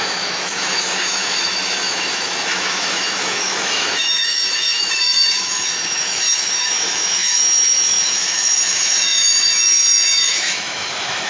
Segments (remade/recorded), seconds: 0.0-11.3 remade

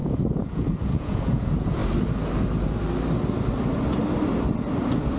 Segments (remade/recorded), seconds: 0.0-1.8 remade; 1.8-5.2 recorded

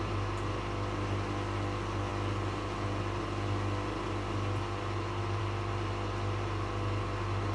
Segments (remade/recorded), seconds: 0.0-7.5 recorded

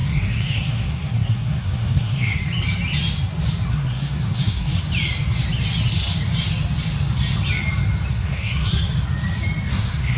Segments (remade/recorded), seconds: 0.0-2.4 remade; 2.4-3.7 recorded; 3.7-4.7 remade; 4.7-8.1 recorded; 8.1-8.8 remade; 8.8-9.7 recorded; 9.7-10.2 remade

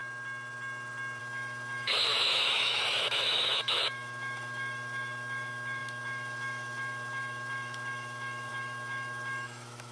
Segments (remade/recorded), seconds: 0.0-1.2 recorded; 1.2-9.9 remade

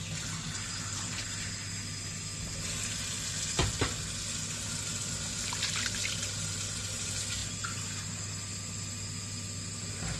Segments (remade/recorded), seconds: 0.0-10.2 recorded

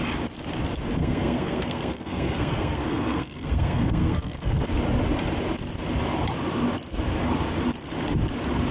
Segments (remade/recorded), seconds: 0.0-1.0 recorded; 1.0-4.7 remade; 4.7-8.7 recorded

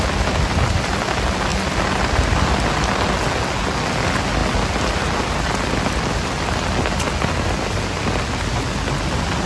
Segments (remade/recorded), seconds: 0.0-9.5 recorded